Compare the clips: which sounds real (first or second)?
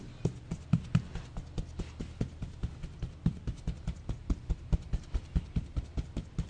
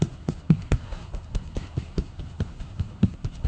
first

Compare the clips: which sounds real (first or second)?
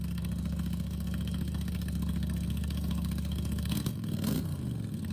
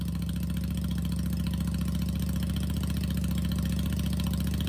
second